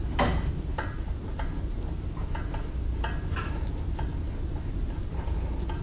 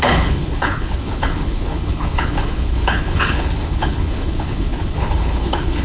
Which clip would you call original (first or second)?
first